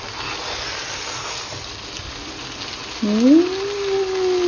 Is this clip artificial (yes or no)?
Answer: no